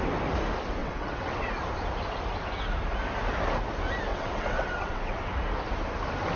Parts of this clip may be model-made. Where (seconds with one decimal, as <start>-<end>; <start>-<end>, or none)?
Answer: 0.8-1.5; 4.1-5.3